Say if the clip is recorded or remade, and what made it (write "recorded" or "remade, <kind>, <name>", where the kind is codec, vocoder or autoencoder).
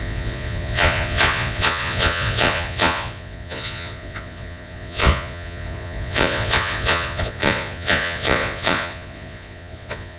remade, vocoder, Vocos